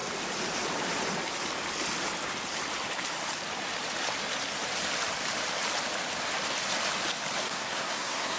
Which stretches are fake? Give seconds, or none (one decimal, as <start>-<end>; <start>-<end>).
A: 7.4-8.4